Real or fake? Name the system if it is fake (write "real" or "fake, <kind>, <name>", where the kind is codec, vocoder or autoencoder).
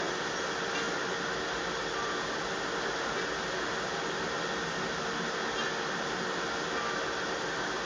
real